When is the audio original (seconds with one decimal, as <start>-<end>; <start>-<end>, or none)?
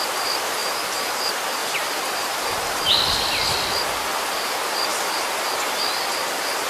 0.0-1.6; 2.4-6.7